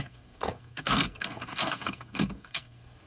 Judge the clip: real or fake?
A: fake